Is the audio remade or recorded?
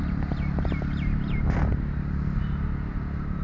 recorded